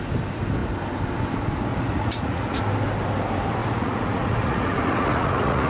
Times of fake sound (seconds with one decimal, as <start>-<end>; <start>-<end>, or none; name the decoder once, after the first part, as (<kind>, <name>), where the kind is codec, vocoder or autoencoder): 1.7-2.6 (vocoder, Vocos); 3.6-5.7

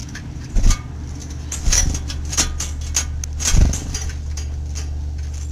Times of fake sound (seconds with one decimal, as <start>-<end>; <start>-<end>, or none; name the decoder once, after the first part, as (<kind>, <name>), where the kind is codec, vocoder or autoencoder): none

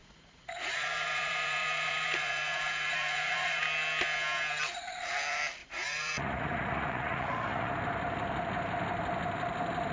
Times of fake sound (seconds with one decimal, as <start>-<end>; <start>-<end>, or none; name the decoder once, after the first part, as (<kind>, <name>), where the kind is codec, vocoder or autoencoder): 0.0-3.6 (vocoder, Vocos); 5.6-7.7

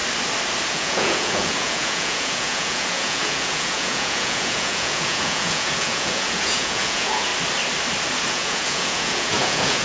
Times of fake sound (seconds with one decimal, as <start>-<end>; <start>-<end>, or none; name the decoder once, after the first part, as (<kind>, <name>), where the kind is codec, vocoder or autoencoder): 0.7-7.3 (vocoder, Vocos); 8.3-9.8

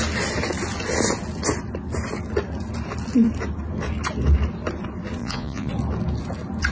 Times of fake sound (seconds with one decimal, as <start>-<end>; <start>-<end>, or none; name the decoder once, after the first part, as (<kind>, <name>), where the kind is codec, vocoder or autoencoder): 5.2-5.7 (vocoder, Vocos)